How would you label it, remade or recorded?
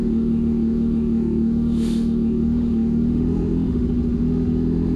remade